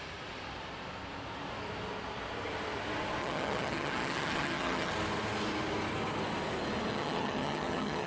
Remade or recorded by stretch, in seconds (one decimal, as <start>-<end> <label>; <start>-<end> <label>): 0.0-3.2 recorded; 3.2-4.9 remade; 4.9-6.9 recorded; 6.9-8.1 remade

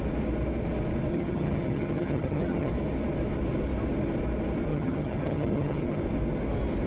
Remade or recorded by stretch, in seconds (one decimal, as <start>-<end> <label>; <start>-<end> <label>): 0.0-1.1 recorded; 1.1-2.7 remade; 2.7-4.7 recorded; 4.7-6.0 remade; 6.0-6.9 recorded

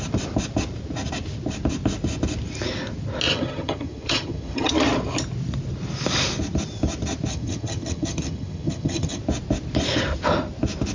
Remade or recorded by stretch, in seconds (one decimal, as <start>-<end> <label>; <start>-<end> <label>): 0.0-3.3 recorded; 3.3-4.7 remade; 4.7-7.3 recorded; 7.3-9.2 remade; 9.2-10.9 recorded

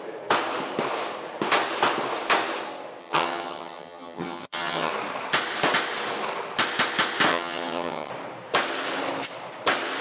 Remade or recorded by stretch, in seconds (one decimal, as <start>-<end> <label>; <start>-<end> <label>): 0.0-3.0 recorded; 3.0-4.9 remade; 4.9-7.3 recorded; 7.3-8.1 remade; 8.1-10.0 recorded

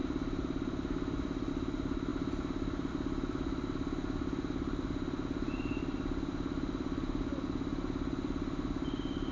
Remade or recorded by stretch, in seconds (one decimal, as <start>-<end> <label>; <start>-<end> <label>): 0.0-9.3 recorded

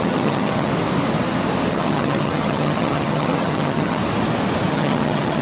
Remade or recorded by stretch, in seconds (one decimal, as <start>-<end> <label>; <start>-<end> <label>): 0.0-0.7 remade; 0.7-1.7 recorded; 1.7-4.0 remade; 4.0-4.7 recorded; 4.7-5.4 remade